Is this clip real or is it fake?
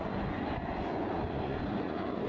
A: fake